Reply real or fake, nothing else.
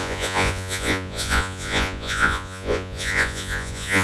fake